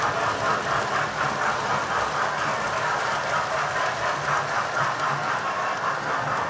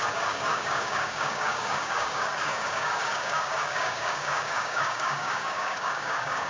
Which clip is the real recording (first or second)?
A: first